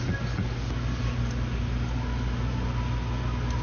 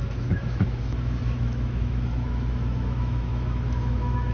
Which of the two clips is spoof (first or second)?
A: second